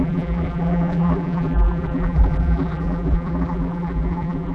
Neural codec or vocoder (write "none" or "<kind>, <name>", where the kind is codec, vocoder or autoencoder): vocoder, BigVGAN v2